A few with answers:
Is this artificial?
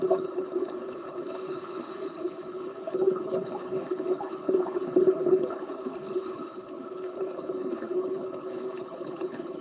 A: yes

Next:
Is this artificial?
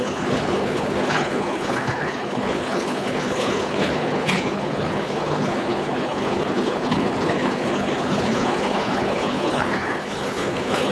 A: yes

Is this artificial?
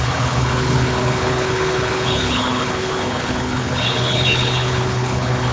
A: yes